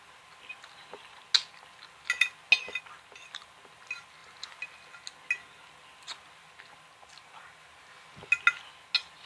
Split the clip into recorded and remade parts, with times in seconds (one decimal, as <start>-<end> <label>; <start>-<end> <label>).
0.0-9.3 recorded